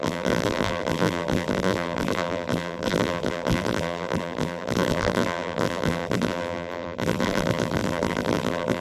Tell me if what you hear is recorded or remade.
remade